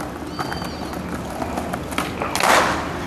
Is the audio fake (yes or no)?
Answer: no